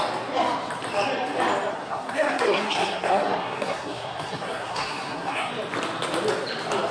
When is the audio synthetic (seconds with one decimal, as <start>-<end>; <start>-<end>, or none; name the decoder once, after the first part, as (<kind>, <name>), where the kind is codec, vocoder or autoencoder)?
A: 1.7-5.5 (codec, SNAC)